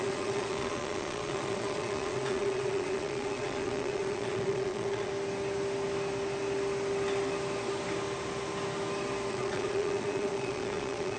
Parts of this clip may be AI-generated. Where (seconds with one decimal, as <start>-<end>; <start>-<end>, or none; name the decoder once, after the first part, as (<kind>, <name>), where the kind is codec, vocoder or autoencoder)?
0.0-5.1 (vocoder, Vocos); 9.3-11.2